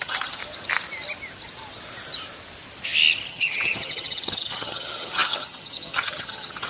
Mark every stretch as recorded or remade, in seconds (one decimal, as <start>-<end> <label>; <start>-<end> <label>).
0.0-0.4 remade; 0.4-3.3 recorded; 3.3-6.7 remade

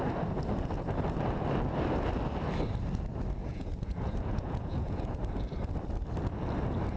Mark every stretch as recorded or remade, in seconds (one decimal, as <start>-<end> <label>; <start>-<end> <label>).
0.0-3.5 recorded; 3.5-5.2 remade; 5.2-7.0 recorded

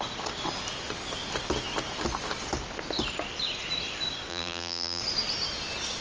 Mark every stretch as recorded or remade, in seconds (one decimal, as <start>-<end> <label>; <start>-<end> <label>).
0.0-4.3 recorded; 4.3-5.0 remade; 5.0-6.0 recorded

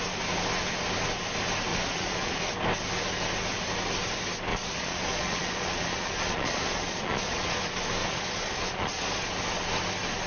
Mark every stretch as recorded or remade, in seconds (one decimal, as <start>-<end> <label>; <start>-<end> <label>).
0.0-1.7 recorded; 1.7-2.5 remade; 2.5-4.5 recorded; 4.5-7.6 remade; 7.6-8.0 recorded; 8.0-9.3 remade; 9.3-10.3 recorded

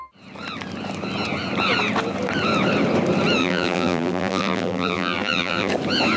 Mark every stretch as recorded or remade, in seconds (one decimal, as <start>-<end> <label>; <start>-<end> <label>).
0.0-3.4 recorded; 3.4-5.7 remade; 5.7-6.2 recorded